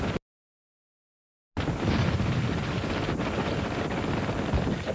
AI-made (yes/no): no